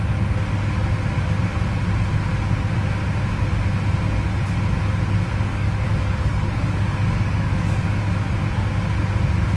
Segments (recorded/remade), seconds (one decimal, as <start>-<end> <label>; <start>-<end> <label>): 0.0-5.5 recorded; 5.5-8.0 remade; 8.0-9.6 recorded